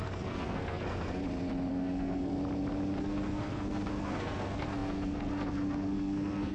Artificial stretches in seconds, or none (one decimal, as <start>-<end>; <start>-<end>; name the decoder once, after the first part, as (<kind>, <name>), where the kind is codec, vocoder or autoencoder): 0.0-1.2 (codec, SNAC); 1.7-2.4; 3.0-6.5